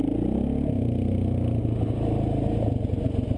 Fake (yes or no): no